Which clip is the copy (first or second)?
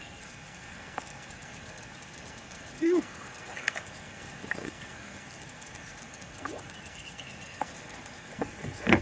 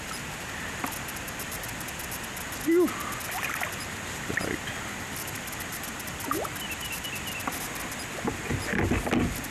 first